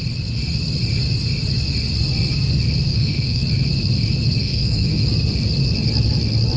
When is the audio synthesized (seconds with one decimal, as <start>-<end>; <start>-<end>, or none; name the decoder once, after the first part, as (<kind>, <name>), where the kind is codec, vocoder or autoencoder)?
2.9-3.4 (codec, SNAC); 4.4-5.1